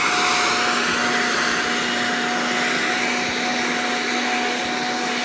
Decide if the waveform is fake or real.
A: real